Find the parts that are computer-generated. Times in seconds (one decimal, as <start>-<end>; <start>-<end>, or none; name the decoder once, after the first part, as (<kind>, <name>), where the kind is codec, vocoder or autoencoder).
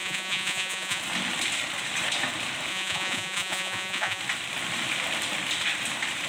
0.0-1.0 (vocoder, Vocos); 2.7-4.2